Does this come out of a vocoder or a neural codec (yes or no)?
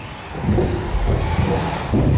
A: no